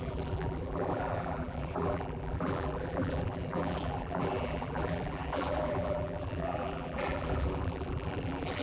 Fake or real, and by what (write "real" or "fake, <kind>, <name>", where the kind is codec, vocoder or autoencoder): fake, vocoder, BigVGAN v2